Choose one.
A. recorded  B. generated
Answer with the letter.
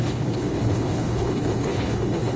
B